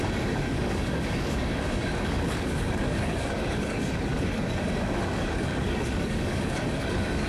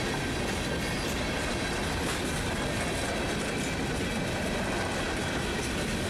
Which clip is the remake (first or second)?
first